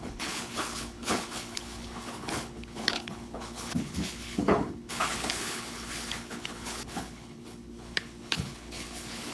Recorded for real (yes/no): no